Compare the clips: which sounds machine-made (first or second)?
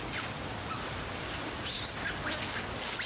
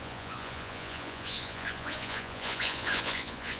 second